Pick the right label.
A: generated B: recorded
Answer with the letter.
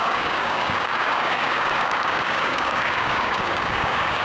A